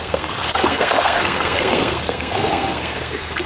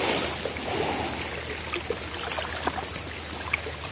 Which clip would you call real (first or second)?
second